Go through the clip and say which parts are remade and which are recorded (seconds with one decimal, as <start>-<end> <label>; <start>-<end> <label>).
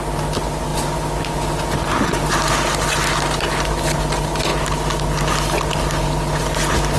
0.0-7.0 recorded